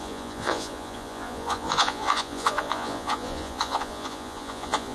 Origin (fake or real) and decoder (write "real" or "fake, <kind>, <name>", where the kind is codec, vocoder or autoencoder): fake, vocoder, Vocos